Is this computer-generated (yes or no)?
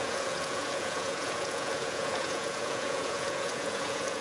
yes